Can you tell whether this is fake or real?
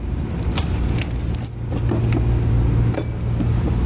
real